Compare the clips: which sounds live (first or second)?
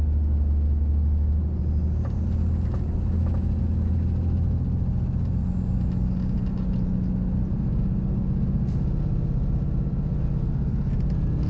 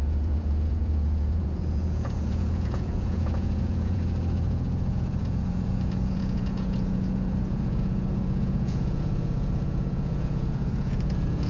first